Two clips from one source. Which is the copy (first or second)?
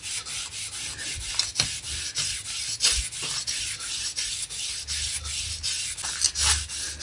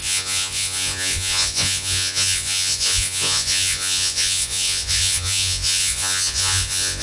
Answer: second